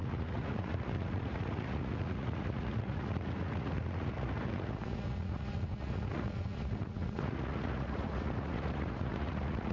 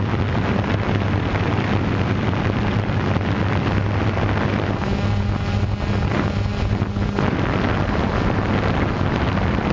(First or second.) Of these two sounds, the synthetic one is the first